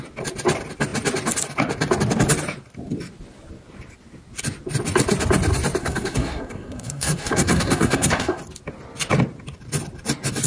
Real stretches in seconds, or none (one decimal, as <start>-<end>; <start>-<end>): 0.0-5.8; 8.4-10.5